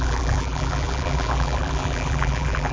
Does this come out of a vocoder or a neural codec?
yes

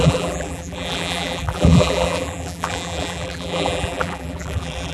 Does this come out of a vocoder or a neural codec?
yes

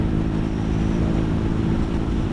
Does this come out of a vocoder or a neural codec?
yes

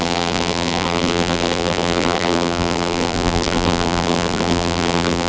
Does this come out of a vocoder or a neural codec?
yes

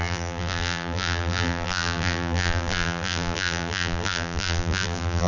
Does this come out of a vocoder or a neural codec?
yes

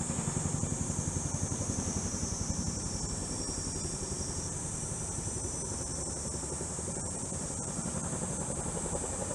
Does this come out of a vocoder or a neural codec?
yes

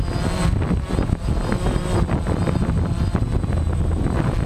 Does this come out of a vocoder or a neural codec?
no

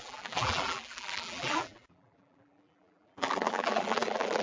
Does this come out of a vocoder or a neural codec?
yes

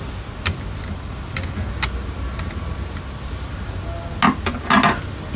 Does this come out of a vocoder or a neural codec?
no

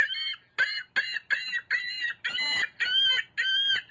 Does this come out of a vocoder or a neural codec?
no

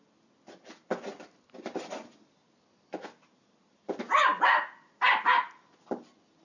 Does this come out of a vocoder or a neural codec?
no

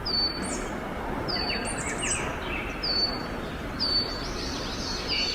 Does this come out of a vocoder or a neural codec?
no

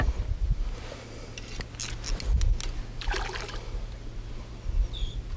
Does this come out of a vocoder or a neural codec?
no